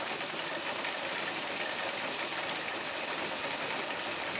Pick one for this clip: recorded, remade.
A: recorded